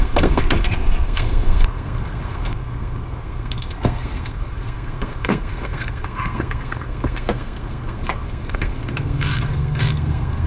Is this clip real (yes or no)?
no